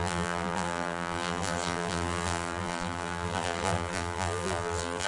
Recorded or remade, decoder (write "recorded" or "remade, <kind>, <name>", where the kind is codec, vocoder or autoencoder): remade, vocoder, BigVGAN v2